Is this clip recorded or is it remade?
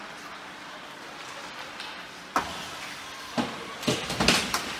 recorded